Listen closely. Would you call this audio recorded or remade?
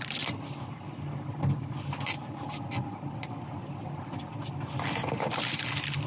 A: recorded